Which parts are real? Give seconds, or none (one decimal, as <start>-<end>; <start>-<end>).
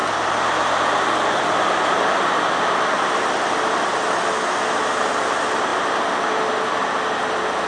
0.0-7.7